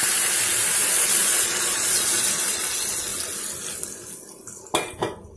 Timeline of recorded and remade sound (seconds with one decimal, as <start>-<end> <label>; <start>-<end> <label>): 0.0-0.8 recorded; 0.8-2.6 remade; 2.6-5.4 recorded